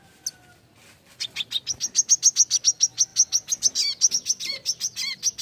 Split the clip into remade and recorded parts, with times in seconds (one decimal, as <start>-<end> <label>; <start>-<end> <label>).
0.0-5.4 recorded